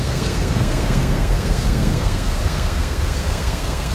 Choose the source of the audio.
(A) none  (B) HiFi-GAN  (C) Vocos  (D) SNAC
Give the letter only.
D